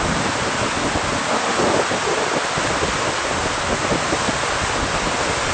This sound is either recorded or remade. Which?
recorded